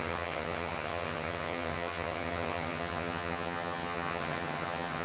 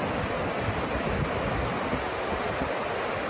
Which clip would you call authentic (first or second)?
second